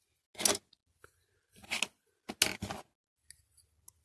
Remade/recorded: recorded